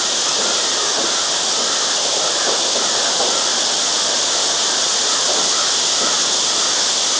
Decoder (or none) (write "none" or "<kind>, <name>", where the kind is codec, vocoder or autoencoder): none